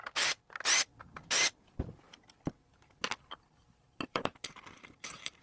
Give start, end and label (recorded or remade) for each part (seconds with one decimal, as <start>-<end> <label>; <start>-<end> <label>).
0.0-2.8 recorded; 2.8-5.4 remade